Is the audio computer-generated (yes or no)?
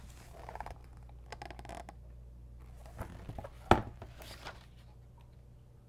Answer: no